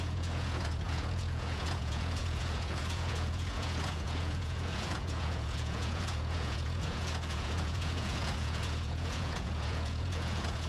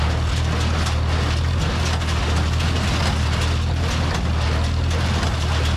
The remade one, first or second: first